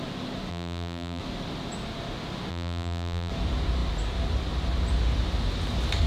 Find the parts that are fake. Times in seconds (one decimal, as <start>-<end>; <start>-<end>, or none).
0.5-1.2; 2.5-3.3